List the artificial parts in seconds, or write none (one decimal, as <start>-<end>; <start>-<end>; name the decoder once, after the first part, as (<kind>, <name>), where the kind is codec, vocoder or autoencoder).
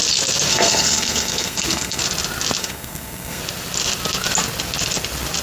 0.5-2.0 (codec, SNAC); 2.6-3.4